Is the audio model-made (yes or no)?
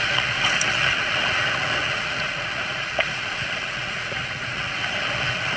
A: yes